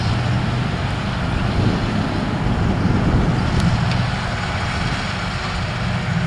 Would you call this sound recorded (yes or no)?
yes